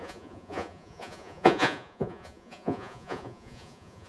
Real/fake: fake